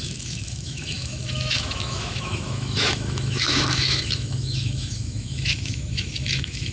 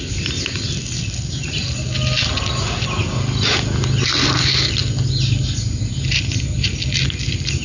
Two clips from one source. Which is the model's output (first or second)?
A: first